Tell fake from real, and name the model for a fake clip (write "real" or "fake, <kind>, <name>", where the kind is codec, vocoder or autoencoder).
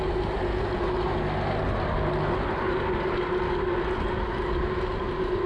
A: real